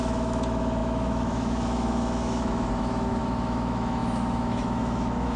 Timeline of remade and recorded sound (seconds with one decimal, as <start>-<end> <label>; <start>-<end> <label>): 0.0-5.4 remade